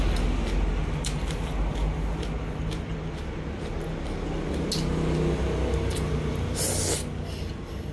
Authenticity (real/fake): real